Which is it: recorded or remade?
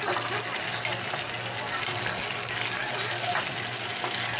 recorded